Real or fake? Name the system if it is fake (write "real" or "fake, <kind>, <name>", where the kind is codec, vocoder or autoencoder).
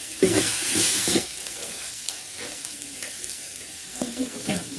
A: fake, codec, SNAC